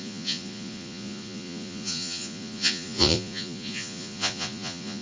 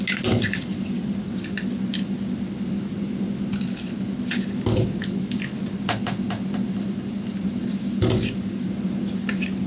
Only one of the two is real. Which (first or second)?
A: second